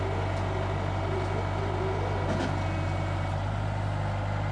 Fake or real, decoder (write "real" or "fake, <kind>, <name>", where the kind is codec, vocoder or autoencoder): real